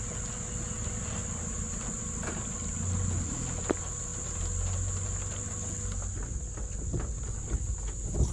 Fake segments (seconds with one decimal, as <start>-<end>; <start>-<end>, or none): none